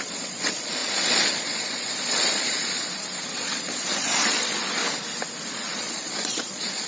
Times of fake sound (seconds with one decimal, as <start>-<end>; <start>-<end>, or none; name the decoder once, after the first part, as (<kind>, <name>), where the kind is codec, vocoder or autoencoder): 0.0-4.8 (vocoder, Vocos); 5.5-6.9